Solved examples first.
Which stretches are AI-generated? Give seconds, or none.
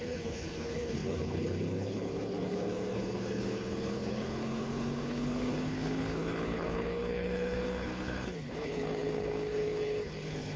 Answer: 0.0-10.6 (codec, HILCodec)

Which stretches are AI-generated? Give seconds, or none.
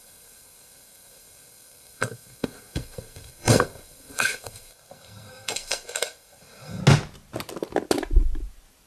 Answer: 0.0-6.8 (codec, SNAC)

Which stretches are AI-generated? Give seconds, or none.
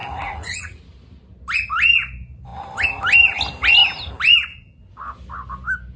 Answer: 0.0-0.8 (vocoder, Vocos)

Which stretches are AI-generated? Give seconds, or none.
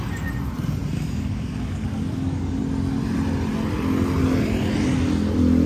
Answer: 0.9-2.6 (codec, DAC)